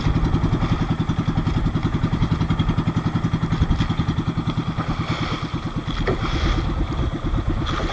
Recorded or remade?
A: recorded